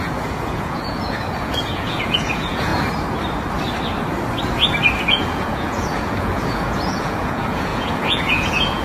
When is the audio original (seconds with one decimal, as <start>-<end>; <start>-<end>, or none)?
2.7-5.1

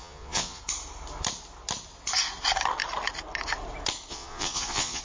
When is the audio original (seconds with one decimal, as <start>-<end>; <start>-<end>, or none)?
0.6-4.1

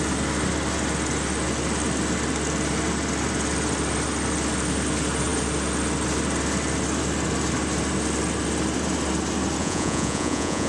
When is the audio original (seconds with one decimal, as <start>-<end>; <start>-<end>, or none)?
0.0-9.6

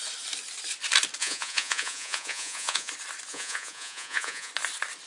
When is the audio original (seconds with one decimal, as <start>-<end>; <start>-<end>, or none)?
0.0-1.2; 2.9-3.3; 4.5-5.1

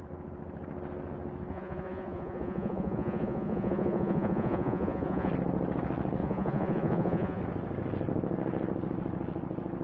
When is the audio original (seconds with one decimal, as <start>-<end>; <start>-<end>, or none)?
0.0-1.5; 5.3-6.2; 7.4-9.8